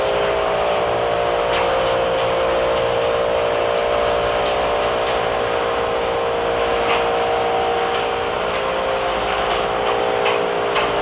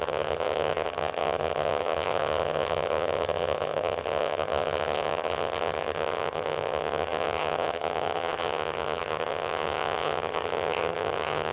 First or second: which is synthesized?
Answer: second